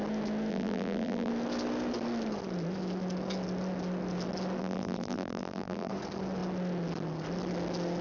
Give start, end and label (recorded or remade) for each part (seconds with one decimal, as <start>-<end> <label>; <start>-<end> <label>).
0.0-0.5 recorded; 0.5-1.3 remade; 1.3-4.6 recorded; 4.6-5.9 remade; 5.9-8.0 recorded